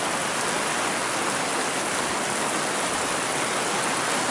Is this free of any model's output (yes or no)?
yes